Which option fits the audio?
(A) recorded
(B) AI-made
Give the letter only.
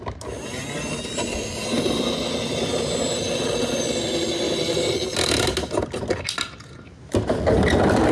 A